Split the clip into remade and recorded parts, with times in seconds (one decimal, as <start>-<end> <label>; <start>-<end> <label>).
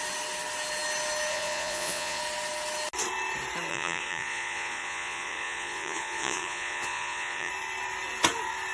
0.0-1.3 recorded; 1.3-2.2 remade; 2.2-3.7 recorded; 3.7-7.5 remade; 7.5-8.7 recorded